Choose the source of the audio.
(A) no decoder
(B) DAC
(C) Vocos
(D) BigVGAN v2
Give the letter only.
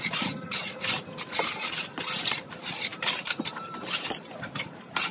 D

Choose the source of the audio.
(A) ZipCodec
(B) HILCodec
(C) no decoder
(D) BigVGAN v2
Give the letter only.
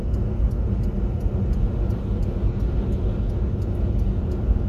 C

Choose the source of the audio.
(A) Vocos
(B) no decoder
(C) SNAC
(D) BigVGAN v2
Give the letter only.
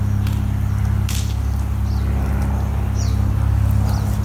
B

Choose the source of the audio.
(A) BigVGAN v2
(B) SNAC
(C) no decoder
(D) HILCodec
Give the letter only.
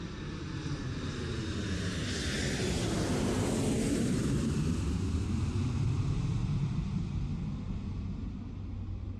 C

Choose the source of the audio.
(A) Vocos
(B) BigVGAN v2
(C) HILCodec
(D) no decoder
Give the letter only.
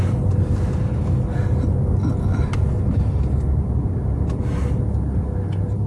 D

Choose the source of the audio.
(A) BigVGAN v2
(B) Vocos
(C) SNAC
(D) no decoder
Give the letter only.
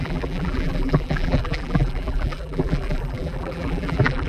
A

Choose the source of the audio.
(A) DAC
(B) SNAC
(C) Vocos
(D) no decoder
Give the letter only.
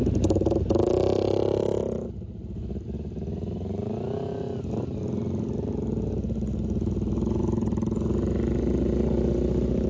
D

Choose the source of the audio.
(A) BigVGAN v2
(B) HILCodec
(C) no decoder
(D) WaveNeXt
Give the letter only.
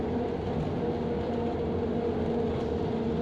C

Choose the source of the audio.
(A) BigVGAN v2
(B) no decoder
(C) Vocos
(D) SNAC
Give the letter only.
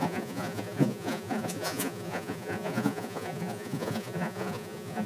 C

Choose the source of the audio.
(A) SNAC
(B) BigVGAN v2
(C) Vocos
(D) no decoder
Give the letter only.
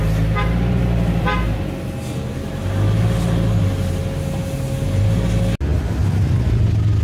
D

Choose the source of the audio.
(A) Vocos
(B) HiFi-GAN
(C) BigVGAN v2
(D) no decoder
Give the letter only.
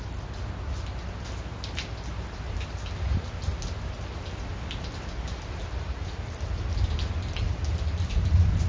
D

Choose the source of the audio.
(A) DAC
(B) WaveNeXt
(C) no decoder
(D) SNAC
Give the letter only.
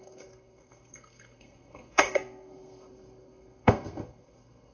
D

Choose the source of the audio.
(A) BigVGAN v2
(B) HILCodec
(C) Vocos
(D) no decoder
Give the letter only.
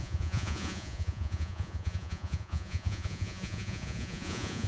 C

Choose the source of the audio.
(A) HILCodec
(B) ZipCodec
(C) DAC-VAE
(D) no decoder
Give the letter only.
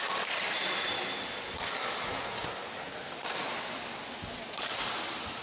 D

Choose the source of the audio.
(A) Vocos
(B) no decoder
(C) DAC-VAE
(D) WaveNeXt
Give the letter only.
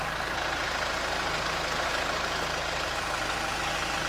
B